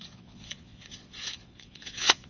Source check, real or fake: fake